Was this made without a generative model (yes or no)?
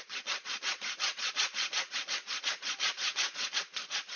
no